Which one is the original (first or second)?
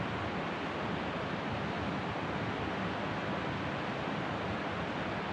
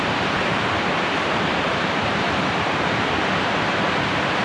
first